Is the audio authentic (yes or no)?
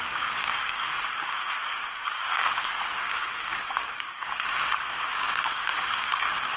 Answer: no